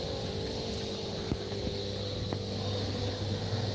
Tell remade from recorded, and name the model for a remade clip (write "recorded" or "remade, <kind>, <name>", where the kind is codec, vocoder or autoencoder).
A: recorded